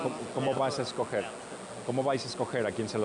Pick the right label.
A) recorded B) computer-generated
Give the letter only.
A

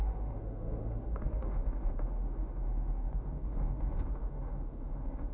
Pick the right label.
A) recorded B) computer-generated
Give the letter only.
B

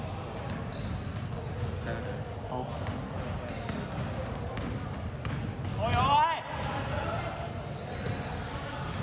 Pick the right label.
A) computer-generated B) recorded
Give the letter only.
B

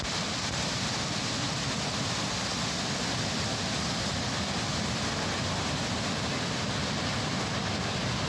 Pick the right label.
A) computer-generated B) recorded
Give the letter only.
B